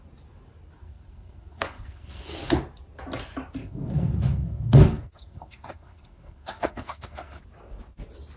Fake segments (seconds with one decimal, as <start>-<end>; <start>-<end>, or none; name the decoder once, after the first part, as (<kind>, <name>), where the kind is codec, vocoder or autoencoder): 0.8-2.6 (codec, SNAC); 3.6-7.4